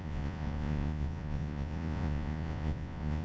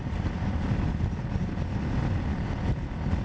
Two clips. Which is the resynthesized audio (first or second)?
first